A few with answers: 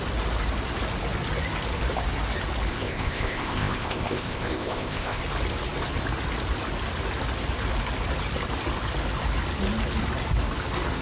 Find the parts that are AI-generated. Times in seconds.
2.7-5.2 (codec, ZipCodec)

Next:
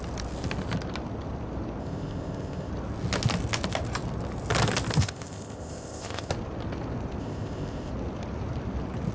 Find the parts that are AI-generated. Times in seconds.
1.8-2.7 (codec, ZipCodec); 5.0-6.3; 7.2-7.9

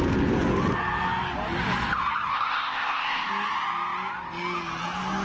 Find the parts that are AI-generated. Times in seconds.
2.3-3.3 (codec, ZipCodec)

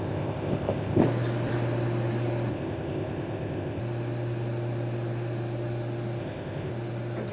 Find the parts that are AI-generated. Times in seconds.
0.0-1.0 (codec, ZipCodec); 2.5-3.8; 6.2-6.7

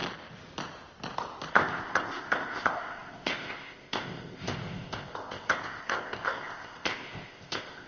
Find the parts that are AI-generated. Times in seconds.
1.5-7.9 (codec, ZipCodec)